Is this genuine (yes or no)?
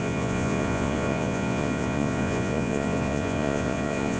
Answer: no